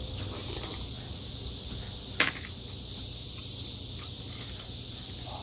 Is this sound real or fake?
real